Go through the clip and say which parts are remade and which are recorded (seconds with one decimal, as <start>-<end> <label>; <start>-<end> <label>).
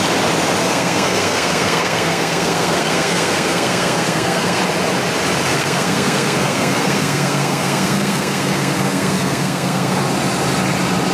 0.0-0.6 recorded; 0.6-4.6 remade; 4.6-5.5 recorded; 5.5-10.0 remade; 10.0-11.1 recorded